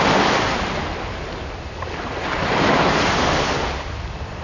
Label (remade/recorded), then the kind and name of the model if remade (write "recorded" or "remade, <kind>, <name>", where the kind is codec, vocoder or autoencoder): recorded